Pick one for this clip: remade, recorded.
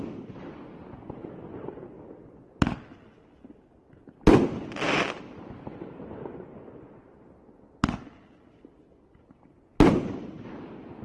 recorded